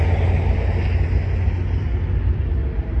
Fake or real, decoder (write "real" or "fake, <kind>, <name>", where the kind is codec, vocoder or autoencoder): real